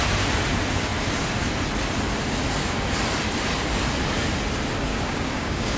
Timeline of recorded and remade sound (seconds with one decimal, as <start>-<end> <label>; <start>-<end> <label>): 0.0-4.9 recorded; 4.9-5.8 remade